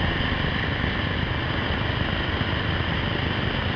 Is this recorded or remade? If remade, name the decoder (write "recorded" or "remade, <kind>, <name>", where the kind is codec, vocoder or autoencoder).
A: recorded